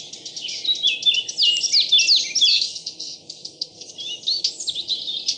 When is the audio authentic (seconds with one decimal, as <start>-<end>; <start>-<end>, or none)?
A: 0.0-2.5; 3.9-5.4